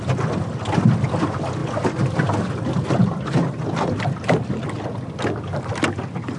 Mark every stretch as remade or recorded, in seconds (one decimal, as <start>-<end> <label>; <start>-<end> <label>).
0.0-6.4 recorded